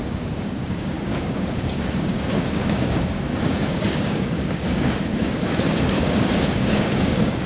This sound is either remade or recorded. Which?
remade